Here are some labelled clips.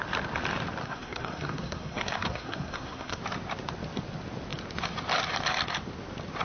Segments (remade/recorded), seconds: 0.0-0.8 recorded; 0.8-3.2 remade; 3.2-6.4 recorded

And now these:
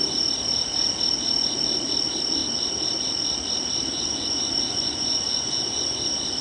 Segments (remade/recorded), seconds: 0.0-3.9 recorded; 3.9-6.0 remade; 6.0-6.4 recorded